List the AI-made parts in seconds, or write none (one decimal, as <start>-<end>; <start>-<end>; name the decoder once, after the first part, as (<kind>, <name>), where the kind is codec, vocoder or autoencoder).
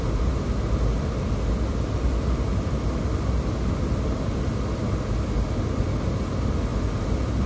none